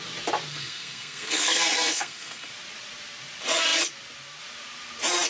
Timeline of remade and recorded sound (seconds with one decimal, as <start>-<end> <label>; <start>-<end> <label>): 0.0-0.5 recorded; 0.5-2.5 remade; 2.5-5.3 recorded